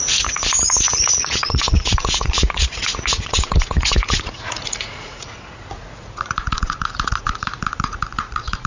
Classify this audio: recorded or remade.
remade